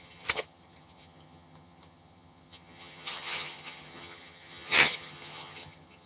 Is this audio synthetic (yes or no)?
yes